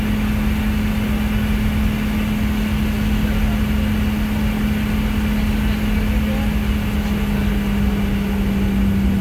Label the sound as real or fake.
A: real